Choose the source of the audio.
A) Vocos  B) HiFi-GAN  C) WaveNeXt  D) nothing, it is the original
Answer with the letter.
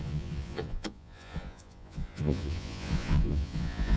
A